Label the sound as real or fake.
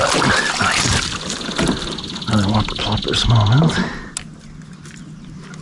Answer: real